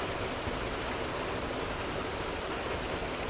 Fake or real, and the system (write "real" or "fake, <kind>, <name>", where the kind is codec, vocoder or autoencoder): real